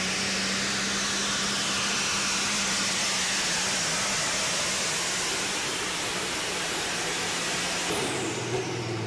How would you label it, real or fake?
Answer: real